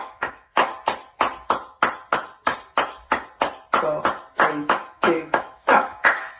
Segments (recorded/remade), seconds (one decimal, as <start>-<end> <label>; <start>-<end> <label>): 0.0-0.7 remade; 0.7-4.5 recorded; 4.5-6.4 remade